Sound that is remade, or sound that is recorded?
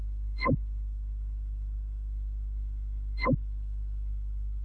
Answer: remade